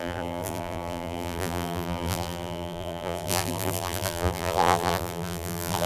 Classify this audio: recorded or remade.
remade